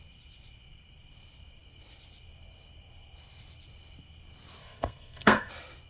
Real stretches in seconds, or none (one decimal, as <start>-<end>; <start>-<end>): 0.0-4.6; 5.5-5.9